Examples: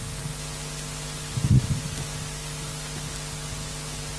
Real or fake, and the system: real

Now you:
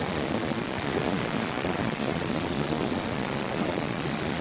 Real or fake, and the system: fake, vocoder, Vocos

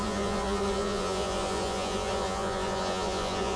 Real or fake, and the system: fake, vocoder, Vocos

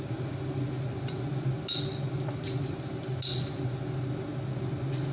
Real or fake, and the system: real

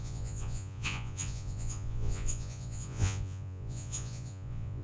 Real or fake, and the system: fake, vocoder, Vocos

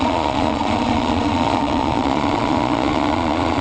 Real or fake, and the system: fake, vocoder, Vocos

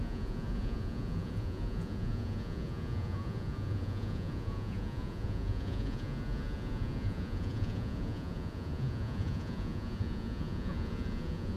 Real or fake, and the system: fake, vocoder, Vocos